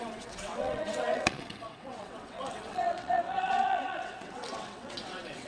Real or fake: fake